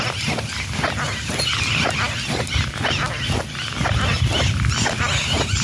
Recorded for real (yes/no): yes